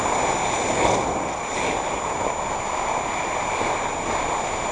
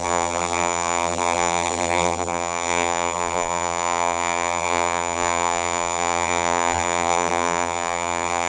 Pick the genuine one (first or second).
first